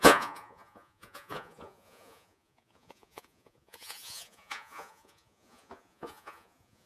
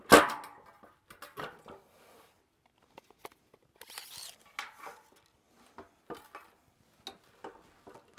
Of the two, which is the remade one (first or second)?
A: first